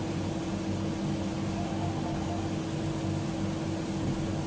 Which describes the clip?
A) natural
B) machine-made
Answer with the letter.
A